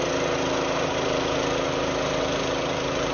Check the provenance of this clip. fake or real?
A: real